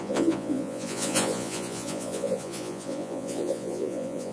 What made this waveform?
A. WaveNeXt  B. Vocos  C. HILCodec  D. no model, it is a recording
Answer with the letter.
B